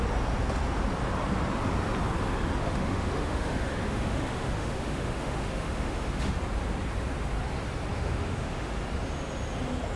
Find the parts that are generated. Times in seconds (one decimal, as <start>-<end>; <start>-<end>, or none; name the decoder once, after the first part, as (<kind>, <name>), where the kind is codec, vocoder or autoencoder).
2.6-6.4 (autoencoder, DAC-VAE); 7.9-8.7